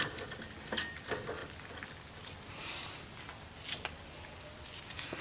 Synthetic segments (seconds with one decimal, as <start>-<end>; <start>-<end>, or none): none